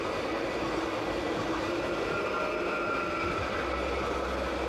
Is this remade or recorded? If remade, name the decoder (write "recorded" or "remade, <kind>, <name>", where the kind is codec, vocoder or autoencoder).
recorded